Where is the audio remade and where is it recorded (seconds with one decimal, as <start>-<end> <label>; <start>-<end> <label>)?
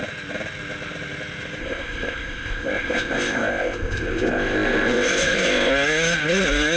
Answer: 0.0-1.6 recorded; 1.6-5.7 remade; 5.7-6.8 recorded